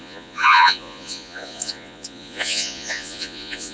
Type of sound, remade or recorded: remade